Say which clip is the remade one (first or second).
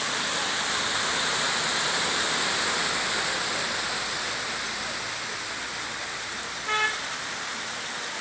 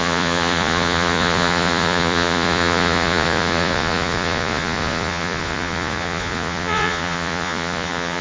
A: second